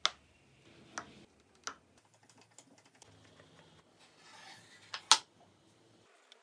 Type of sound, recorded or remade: recorded